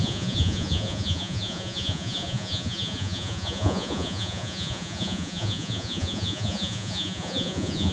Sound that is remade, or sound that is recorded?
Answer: remade